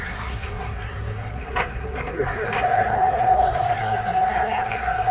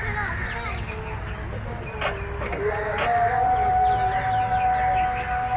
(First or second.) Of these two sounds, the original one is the second